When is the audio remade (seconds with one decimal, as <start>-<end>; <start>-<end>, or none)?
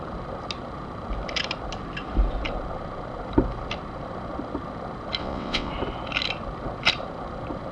5.2-5.7